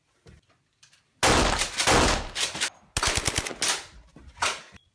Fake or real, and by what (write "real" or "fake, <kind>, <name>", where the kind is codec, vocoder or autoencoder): real